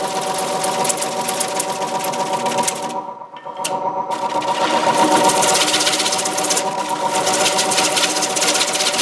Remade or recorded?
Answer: recorded